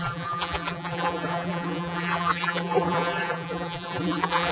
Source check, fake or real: fake